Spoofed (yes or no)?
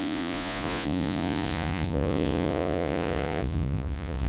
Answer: yes